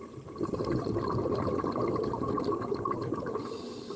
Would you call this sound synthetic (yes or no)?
no